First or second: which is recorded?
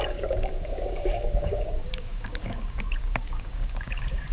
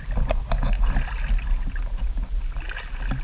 second